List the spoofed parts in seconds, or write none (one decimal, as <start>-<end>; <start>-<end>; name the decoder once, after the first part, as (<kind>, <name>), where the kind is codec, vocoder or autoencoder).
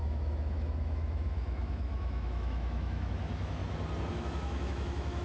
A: 0.0-3.6 (autoencoder, DAC-VAE); 4.1-5.2